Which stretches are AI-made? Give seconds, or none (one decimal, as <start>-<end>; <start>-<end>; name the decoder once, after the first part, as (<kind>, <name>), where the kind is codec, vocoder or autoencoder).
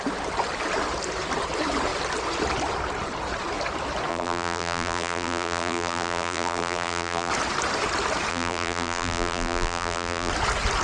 4.1-7.3 (vocoder, BigVGAN v2); 8.3-10.3